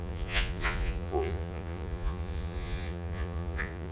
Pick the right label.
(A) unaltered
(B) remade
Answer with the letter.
B